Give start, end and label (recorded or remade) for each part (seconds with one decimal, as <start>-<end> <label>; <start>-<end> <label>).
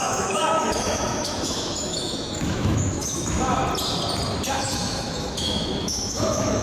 0.0-3.6 remade; 3.6-4.5 recorded; 4.5-6.6 remade